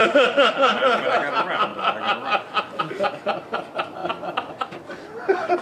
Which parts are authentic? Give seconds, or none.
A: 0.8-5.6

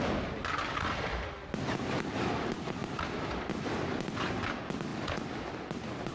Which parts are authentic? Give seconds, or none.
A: 0.0-6.1

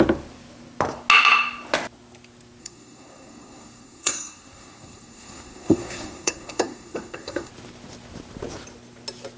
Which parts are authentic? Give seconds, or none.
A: 0.0-2.6; 7.5-9.4

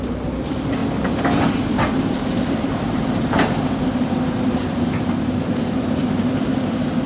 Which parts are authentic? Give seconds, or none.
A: 0.8-1.9

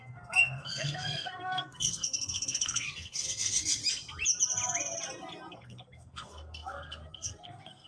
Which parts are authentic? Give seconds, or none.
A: 3.8-5.5

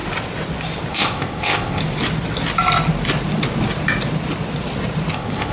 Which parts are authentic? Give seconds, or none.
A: 0.0-0.9; 1.8-5.1